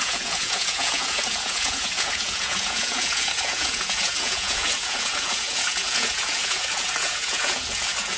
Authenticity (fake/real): fake